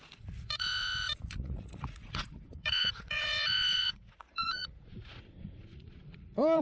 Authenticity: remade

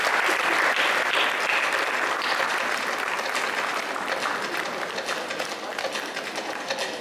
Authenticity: recorded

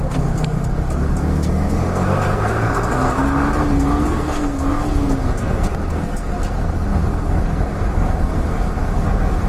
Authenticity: remade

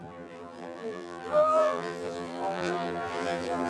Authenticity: remade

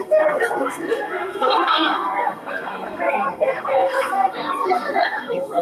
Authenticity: remade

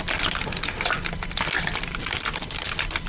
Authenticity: recorded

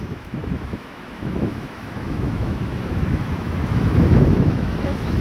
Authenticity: remade